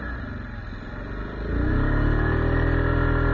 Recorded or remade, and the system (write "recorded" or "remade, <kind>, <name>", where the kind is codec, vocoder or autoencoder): recorded